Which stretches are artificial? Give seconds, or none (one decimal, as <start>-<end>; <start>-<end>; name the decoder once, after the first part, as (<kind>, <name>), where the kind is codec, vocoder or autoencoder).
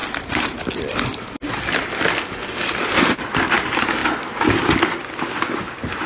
3.5-4.0 (vocoder, BigVGAN v2); 5.5-6.1